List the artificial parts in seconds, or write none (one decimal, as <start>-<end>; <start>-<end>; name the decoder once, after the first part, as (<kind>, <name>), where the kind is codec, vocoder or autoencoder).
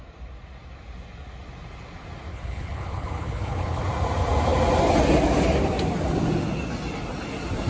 2.3-3.8 (codec, HILCodec)